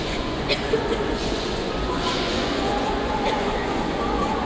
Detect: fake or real fake